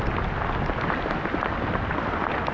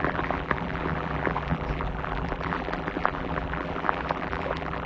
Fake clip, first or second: second